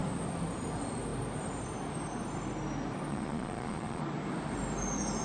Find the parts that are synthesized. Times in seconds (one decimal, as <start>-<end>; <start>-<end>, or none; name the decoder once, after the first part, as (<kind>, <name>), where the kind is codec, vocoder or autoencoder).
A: 3.1-4.0 (vocoder, Vocos)